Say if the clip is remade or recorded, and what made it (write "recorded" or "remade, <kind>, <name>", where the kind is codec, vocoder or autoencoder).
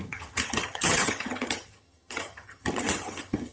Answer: remade, vocoder, HiFi-GAN